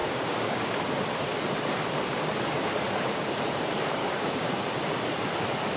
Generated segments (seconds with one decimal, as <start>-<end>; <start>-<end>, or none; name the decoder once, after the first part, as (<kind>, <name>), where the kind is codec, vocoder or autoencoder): 0.0-0.7 (codec, DAC); 4.0-4.6